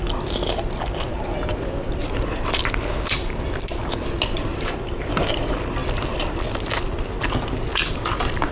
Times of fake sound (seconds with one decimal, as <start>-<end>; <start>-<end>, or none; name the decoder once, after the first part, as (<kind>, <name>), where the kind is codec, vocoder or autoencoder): 1.1-1.7 (vocoder, BigVGAN v2); 4.5-5.1; 5.8-6.7